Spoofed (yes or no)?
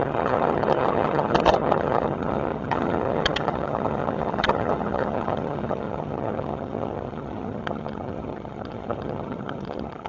yes